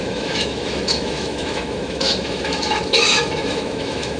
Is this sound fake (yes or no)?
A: yes